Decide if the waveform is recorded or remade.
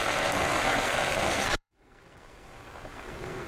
remade